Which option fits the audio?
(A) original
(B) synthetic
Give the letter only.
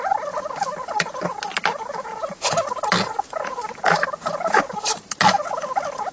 A